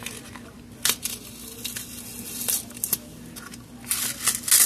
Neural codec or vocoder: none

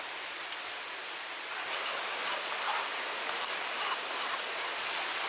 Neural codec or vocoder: none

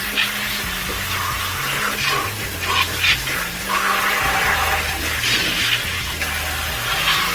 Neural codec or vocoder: none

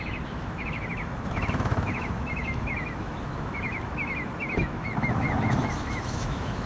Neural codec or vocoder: autoencoder, DAC-VAE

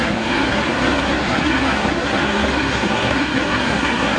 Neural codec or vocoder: codec, SNAC